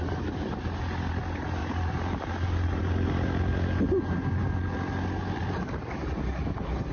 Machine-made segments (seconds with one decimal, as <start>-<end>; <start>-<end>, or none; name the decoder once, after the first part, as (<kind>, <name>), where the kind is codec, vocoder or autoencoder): none